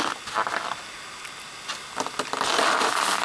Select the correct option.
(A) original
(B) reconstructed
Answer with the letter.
A